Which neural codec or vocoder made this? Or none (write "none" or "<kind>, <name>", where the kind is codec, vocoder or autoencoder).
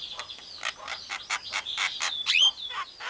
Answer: none